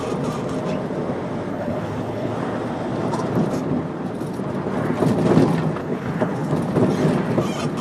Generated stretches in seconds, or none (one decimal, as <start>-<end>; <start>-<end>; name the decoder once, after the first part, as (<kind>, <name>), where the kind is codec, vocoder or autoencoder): 1.5-2.3 (codec, HILCodec); 5.8-6.5